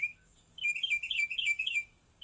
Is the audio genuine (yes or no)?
no